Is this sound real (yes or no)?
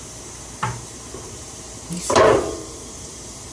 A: no